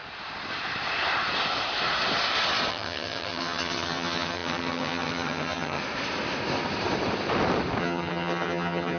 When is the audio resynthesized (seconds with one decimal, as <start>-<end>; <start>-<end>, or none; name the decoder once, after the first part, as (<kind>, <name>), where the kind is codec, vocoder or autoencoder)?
2.7-5.8 (vocoder, HiFi-GAN); 7.8-9.0